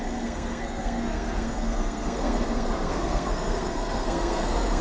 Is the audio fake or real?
fake